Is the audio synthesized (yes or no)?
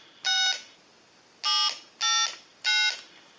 no